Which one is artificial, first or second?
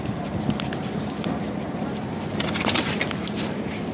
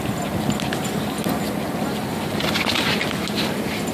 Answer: first